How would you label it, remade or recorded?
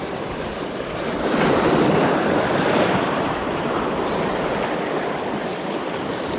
remade